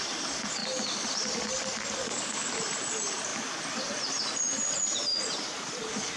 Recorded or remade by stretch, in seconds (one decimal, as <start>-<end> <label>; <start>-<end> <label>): 0.0-2.0 recorded; 2.0-2.6 remade; 2.6-6.2 recorded